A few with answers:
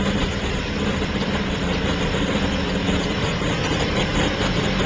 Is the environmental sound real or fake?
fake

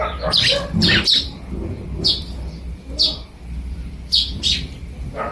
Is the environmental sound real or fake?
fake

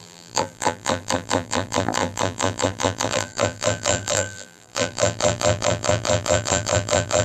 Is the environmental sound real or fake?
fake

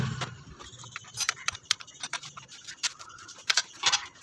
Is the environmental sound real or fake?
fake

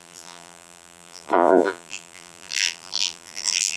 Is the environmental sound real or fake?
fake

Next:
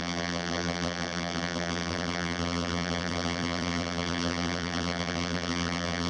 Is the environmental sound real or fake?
fake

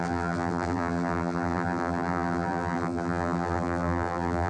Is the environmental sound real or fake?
fake